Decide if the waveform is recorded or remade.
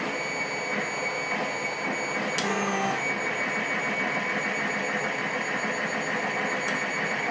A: recorded